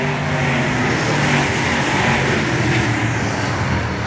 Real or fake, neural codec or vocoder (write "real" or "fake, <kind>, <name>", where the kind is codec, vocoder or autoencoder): real